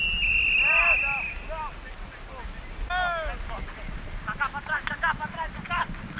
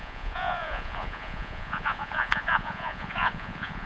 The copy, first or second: second